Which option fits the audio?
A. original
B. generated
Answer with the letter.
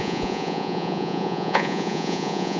B